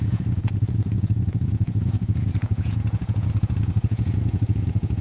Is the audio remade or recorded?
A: remade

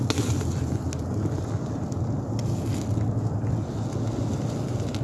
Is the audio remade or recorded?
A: recorded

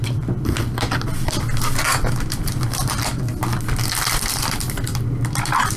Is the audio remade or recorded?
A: remade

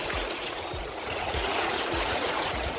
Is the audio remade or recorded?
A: remade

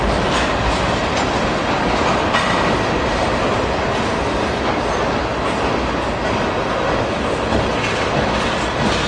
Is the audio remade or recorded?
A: recorded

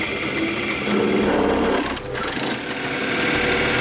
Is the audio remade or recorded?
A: recorded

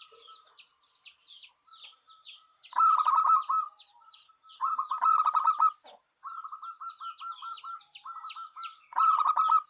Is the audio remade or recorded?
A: recorded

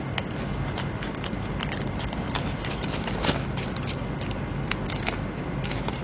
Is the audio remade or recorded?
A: recorded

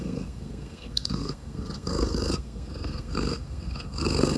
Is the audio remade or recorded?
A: remade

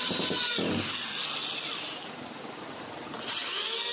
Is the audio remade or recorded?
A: recorded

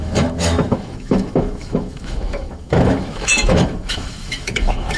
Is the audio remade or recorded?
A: remade